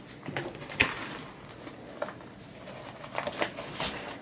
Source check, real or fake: real